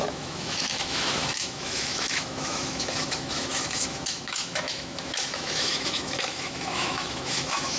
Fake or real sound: fake